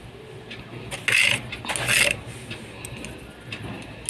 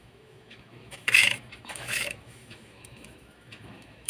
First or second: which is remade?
second